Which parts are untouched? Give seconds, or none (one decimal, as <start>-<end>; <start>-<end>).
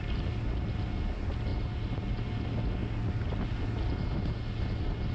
0.0-5.1